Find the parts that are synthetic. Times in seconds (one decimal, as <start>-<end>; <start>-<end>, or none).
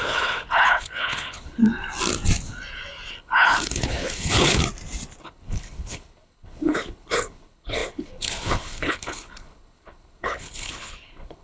0.0-1.6; 3.1-4.6; 5.2-11.4